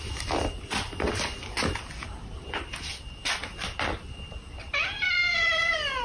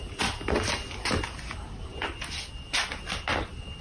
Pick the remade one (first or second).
first